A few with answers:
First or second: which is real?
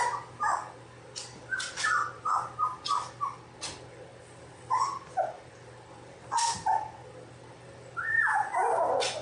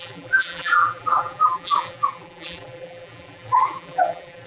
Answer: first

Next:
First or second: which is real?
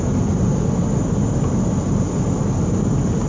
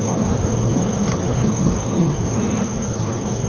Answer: first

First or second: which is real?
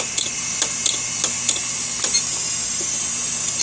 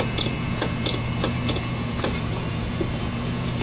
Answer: first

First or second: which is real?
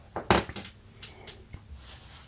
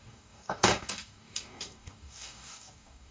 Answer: first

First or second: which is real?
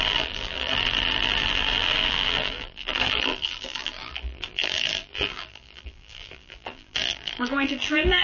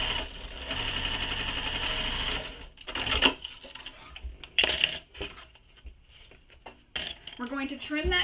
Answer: second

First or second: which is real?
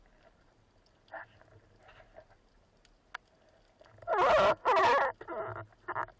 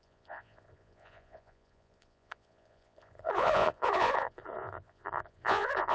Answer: first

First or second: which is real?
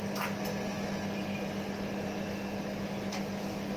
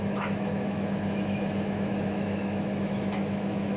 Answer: first